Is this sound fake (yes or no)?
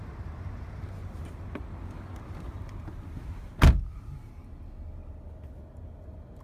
no